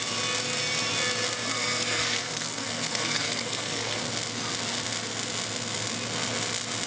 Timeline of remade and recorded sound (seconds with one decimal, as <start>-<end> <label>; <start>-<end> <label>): 0.0-1.5 recorded; 1.5-4.0 remade; 4.0-6.9 recorded